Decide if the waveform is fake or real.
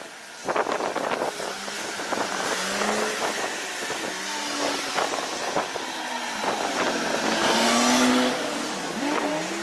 real